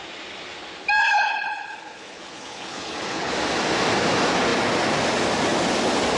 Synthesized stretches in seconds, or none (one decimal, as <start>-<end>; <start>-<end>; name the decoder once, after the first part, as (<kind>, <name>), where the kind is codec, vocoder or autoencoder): 1.0-3.3 (codec, HILCodec)